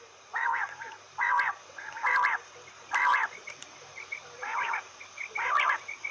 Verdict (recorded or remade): remade